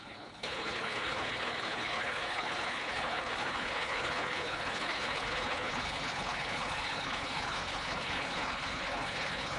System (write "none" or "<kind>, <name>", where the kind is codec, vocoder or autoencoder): codec, HILCodec